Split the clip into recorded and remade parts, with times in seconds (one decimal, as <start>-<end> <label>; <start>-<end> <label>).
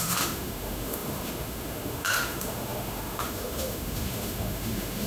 0.0-5.1 remade